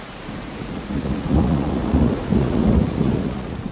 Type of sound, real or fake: fake